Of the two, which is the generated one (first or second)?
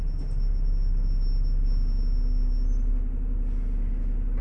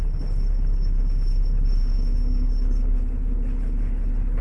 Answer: second